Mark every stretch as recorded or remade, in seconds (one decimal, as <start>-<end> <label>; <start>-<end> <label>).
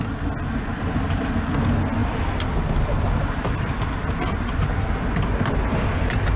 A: 0.0-6.4 recorded